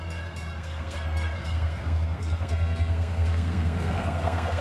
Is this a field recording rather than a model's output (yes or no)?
no